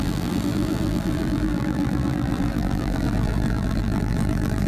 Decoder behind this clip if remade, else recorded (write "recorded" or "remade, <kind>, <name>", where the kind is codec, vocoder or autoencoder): remade, vocoder, BigVGAN v2